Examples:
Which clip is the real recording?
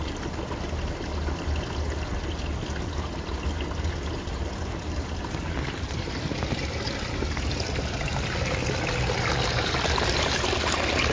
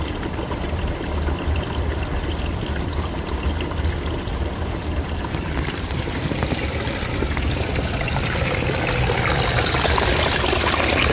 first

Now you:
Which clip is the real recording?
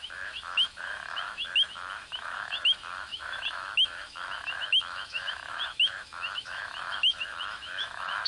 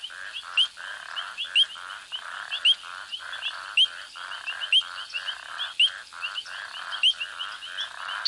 second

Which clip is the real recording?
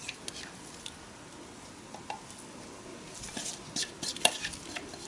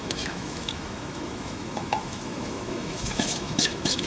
first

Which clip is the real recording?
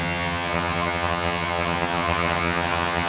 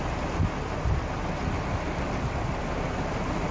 second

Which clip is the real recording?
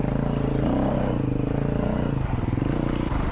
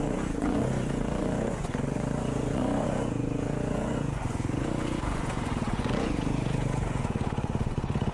first